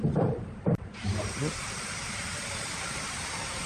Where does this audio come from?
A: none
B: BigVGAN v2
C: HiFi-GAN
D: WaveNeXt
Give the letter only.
B